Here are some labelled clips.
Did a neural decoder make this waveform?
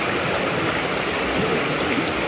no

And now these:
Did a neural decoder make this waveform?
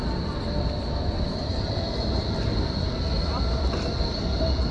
no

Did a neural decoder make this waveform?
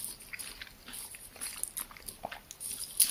no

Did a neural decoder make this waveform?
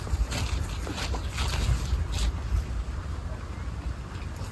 no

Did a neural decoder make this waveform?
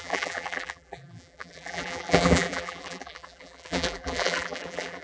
yes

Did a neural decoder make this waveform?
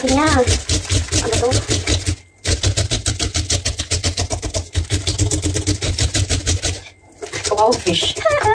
no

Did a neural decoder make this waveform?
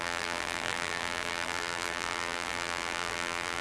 yes